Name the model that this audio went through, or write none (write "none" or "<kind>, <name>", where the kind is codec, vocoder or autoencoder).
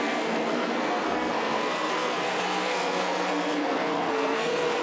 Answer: codec, SNAC